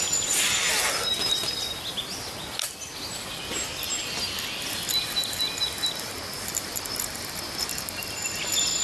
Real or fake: real